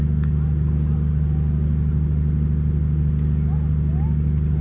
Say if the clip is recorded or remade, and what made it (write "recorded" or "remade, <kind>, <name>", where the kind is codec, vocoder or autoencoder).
recorded